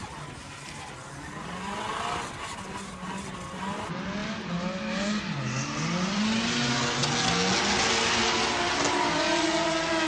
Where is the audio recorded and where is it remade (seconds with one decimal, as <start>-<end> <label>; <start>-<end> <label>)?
0.0-10.1 recorded